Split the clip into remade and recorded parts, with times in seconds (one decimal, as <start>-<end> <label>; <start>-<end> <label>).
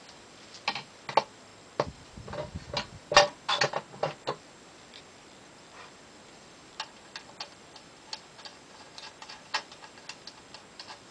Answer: 0.0-8.5 recorded; 8.5-9.4 remade; 9.4-11.1 recorded